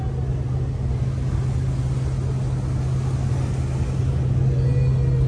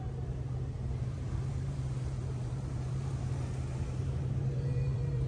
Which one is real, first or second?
first